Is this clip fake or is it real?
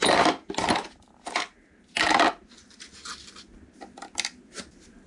real